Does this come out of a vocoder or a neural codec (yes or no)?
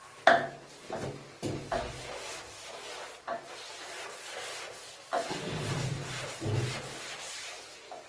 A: no